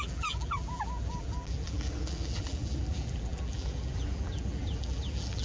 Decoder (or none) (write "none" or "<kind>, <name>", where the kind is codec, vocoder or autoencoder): vocoder, BigVGAN v2